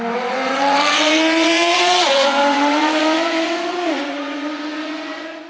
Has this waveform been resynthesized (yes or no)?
yes